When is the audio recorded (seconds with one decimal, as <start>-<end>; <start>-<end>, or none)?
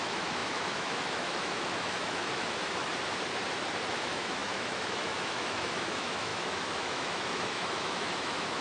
2.8-3.9